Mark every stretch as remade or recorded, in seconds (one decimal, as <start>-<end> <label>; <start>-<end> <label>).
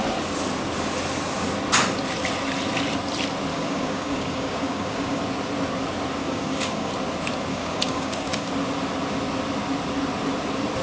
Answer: 0.0-3.5 recorded; 3.5-5.2 remade; 5.2-6.2 recorded; 6.2-6.9 remade; 6.9-7.5 recorded; 7.5-8.5 remade; 8.5-10.8 recorded